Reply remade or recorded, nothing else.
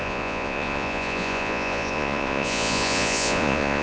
remade